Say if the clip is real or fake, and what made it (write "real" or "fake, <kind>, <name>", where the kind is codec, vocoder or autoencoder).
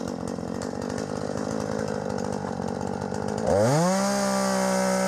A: real